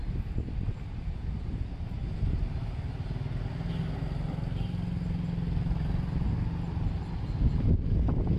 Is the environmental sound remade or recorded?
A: recorded